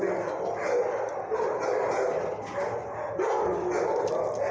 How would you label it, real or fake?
real